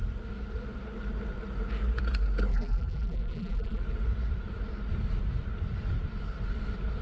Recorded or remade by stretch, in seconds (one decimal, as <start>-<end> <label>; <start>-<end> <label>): 0.0-2.5 recorded; 2.5-3.8 remade; 3.8-7.0 recorded